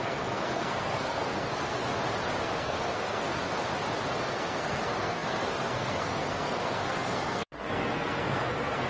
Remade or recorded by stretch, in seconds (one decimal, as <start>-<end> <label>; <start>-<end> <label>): 0.0-1.8 remade; 1.8-2.4 recorded; 2.4-3.4 remade; 3.4-4.2 recorded; 4.2-8.9 remade